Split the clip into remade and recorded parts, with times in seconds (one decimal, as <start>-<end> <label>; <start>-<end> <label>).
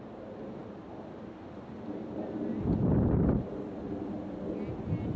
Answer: 0.0-5.2 recorded